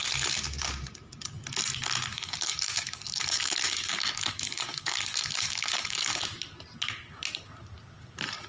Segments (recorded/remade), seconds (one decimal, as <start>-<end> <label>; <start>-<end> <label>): 0.0-2.1 recorded; 2.1-6.2 remade; 6.2-8.5 recorded